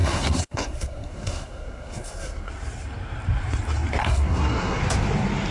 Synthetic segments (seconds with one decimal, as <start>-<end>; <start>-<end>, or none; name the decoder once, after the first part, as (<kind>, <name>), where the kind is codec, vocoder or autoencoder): 0.0-2.5 (codec, SNAC); 4.0-4.8